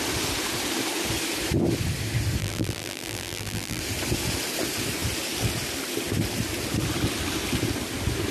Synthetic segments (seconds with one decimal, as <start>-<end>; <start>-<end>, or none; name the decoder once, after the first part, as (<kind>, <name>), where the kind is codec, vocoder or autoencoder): 2.4-3.8 (vocoder, BigVGAN v2)